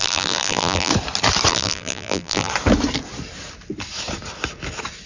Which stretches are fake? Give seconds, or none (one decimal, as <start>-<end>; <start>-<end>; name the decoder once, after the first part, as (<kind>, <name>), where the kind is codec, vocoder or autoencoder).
0.0-0.9 (vocoder, BigVGAN v2); 1.5-2.5